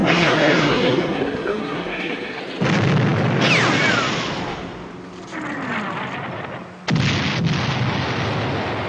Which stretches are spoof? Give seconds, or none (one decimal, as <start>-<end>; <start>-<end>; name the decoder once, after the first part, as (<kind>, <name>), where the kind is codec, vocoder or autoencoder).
0.0-2.4 (codec, SNAC)